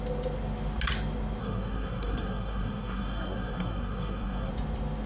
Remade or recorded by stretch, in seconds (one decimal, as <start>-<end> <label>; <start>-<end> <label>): 0.0-1.4 recorded; 1.4-4.5 remade; 4.5-5.1 recorded